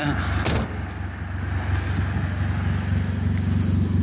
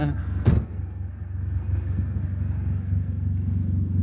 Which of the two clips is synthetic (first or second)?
second